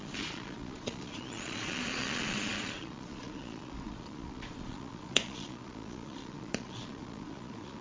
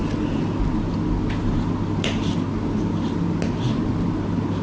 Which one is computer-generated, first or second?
first